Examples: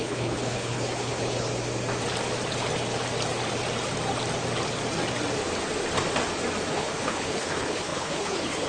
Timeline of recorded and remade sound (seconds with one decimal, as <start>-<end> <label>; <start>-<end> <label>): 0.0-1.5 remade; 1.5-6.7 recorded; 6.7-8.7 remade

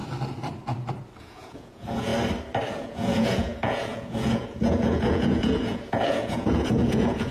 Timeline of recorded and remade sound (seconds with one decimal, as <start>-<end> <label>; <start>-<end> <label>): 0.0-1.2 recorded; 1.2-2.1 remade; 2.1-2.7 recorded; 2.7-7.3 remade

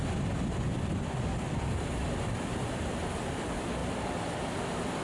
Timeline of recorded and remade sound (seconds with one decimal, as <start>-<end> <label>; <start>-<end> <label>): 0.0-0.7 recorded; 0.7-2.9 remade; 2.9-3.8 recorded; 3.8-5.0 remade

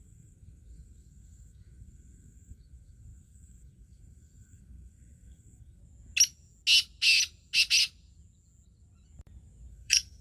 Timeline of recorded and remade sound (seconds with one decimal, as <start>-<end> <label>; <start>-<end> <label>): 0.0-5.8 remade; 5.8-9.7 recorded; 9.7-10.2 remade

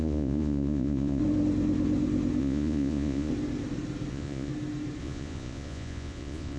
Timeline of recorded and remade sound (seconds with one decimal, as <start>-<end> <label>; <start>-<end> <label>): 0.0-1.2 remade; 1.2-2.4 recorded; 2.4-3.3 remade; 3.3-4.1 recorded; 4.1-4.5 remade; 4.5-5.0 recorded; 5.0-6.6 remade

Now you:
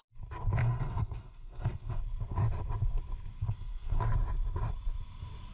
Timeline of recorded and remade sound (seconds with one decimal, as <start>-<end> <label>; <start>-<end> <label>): 0.0-0.6 recorded; 0.6-2.0 remade; 2.0-3.4 recorded; 3.4-4.0 remade; 4.0-5.5 recorded